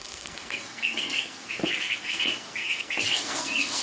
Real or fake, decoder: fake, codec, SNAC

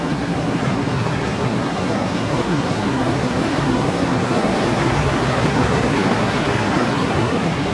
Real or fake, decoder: fake, codec, SNAC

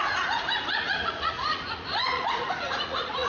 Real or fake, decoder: fake, vocoder, Vocos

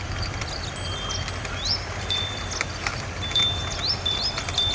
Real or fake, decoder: real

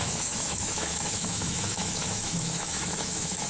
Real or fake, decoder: fake, autoencoder, DAC-VAE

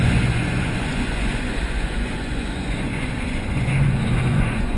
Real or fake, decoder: fake, vocoder, Vocos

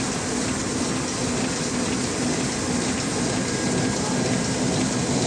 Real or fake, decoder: real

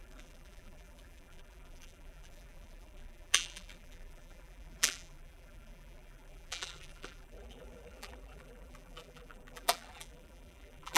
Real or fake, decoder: fake, vocoder, BigVGAN v2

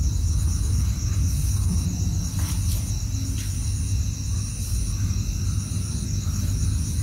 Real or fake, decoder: real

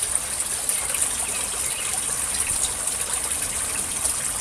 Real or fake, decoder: real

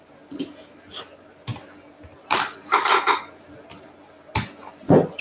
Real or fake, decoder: real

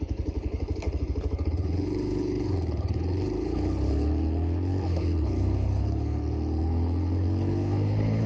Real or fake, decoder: fake, codec, HILCodec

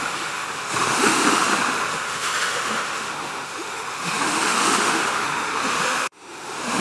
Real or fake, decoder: fake, autoencoder, DAC-VAE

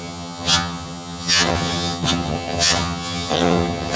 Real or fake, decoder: fake, vocoder, HiFi-GAN